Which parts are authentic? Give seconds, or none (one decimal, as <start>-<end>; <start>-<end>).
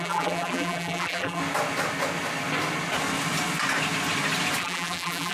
1.4-4.6